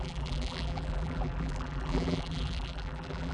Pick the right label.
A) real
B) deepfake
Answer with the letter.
B